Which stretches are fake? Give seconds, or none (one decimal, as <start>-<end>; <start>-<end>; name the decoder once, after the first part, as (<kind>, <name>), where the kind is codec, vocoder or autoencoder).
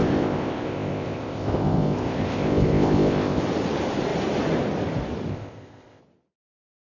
0.0-3.4 (codec, ZipCodec); 5.3-6.0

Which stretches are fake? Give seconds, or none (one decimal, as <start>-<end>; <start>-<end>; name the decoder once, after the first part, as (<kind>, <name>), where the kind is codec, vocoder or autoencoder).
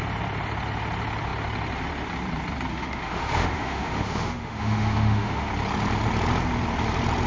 2.7-5.5 (autoencoder, DAC-VAE)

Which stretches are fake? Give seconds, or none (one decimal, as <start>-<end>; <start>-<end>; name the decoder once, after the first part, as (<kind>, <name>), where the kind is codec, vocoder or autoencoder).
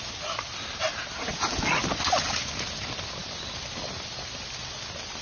none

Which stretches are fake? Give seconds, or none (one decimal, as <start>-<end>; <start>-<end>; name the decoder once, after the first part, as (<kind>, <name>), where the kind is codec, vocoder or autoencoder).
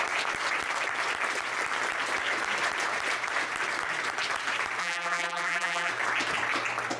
4.8-5.9 (vocoder, BigVGAN v2)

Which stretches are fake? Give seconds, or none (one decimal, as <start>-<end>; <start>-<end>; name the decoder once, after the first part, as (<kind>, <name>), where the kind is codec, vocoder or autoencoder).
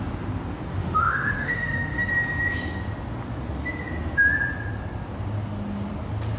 0.8-2.1 (autoencoder, DAC-VAE)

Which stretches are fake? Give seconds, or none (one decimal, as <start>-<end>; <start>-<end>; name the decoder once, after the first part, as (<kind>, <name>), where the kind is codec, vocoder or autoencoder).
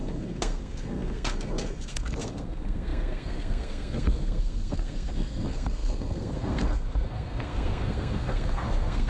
0.0-9.1 (codec, SNAC)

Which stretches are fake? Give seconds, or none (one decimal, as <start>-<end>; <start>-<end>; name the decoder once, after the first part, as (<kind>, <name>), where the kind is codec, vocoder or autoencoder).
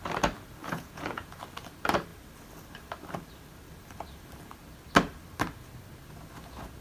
0.6-1.4 (vocoder, Vocos)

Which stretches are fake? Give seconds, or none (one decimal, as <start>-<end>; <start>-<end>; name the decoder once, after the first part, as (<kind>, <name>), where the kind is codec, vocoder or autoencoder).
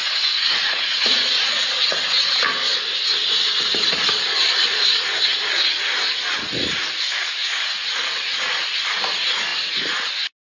0.0-2.4 (vocoder, Vocos); 7.4-8.0